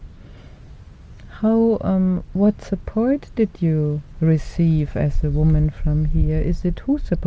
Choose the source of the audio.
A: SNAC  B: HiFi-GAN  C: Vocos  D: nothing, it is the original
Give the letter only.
D